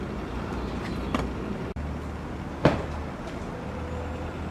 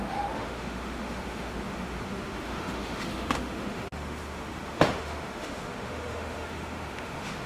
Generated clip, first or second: second